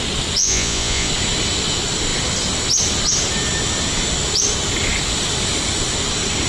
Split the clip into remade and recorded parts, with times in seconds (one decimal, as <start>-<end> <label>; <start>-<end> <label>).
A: 0.0-0.4 recorded; 0.4-1.1 remade; 1.1-6.5 recorded